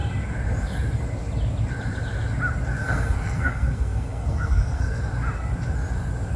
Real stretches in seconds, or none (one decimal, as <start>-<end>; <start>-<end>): 0.0-2.8; 5.0-6.4